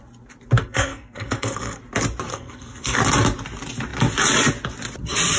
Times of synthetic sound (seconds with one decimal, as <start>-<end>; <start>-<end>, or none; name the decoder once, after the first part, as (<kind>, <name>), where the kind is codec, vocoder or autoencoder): 0.6-1.8 (codec, SNAC); 2.3-3.0